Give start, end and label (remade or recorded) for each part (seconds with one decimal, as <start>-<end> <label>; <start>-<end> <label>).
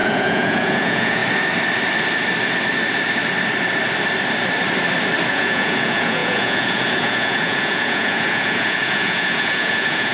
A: 0.0-1.2 remade; 1.2-5.3 recorded; 5.3-10.1 remade